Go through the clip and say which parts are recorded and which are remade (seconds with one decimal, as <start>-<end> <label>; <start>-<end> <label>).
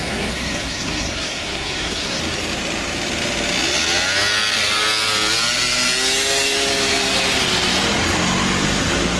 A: 0.0-2.2 remade; 2.2-9.2 recorded